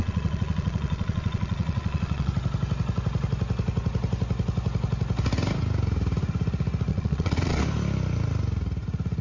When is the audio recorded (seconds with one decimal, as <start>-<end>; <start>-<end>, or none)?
2.3-6.9; 7.6-9.2